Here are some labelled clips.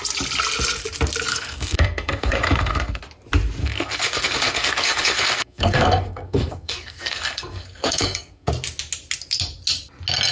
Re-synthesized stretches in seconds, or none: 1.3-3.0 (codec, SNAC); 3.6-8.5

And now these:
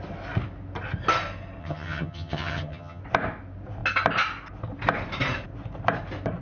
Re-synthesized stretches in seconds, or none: 1.6-3.0 (vocoder, HiFi-GAN)

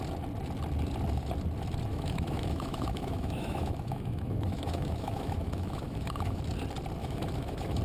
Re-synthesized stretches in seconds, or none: 1.9-6.4 (autoencoder, DAC-VAE); 7.0-7.8

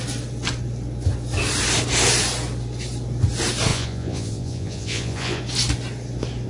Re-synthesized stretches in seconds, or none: 3.7-5.4 (vocoder, Vocos)

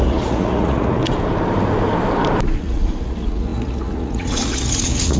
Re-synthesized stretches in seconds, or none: 0.0-1.0 (vocoder, Vocos); 2.6-5.2

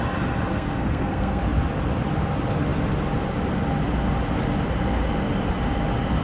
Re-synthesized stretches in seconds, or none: 0.5-1.4 (codec, SNAC)

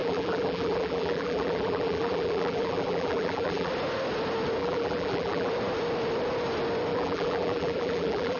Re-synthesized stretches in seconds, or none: 0.0-3.7 (vocoder, BigVGAN v2); 4.6-5.5; 6.9-8.4

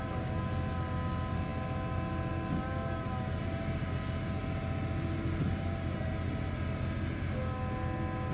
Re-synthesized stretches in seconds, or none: none